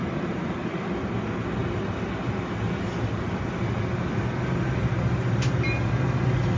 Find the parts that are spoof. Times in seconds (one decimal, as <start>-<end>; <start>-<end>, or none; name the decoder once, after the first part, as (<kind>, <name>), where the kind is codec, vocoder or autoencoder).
none

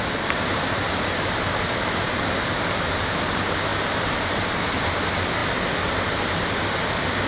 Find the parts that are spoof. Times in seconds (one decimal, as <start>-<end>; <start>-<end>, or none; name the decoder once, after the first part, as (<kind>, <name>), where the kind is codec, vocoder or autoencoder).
none

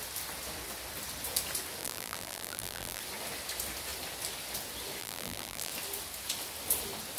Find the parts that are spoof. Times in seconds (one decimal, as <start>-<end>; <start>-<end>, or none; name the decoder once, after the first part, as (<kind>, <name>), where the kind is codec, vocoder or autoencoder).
1.8-3.0 (vocoder, BigVGAN v2); 5.0-5.7

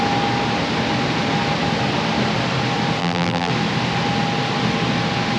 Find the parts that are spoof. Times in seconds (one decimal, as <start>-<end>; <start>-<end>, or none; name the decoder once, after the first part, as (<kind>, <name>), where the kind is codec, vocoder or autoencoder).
3.0-3.5 (vocoder, BigVGAN v2)

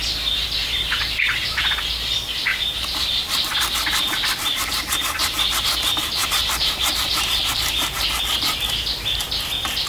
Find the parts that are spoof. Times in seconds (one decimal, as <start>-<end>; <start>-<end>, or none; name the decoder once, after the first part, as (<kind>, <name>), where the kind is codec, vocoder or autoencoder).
0.6-1.8 (vocoder, BigVGAN v2); 2.5-3.6; 4.5-5.2; 6.2-8.2

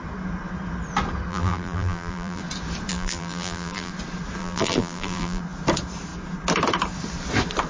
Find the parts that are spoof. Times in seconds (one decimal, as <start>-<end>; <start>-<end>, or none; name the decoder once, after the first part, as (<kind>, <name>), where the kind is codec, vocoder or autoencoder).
1.3-2.4 (vocoder, BigVGAN v2); 2.9-3.9; 4.4-5.4